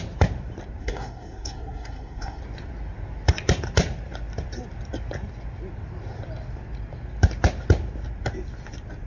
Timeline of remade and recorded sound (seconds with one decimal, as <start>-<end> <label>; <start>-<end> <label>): 0.0-0.8 recorded; 0.8-2.4 remade; 2.4-9.1 recorded